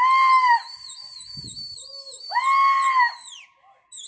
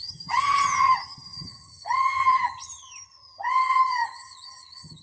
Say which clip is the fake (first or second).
second